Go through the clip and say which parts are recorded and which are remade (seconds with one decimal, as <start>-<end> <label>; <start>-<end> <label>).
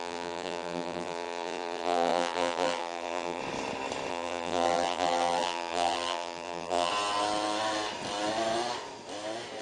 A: 0.0-3.4 remade; 3.4-4.1 recorded; 4.1-6.9 remade; 6.9-9.6 recorded